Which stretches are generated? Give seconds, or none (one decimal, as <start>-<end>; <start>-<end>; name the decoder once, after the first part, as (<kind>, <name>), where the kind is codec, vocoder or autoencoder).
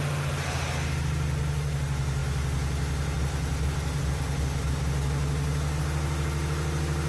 none